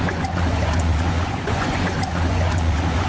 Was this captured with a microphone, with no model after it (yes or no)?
no